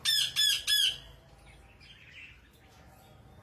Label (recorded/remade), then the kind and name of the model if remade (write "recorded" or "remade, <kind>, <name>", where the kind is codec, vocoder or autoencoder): recorded